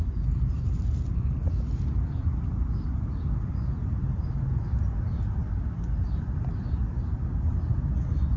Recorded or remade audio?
recorded